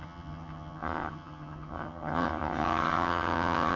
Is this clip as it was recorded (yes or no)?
no